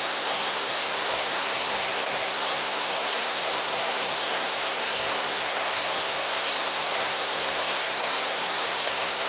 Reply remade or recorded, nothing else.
remade